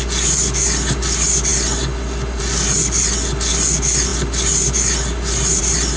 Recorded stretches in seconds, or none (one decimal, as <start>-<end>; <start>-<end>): 0.0-6.0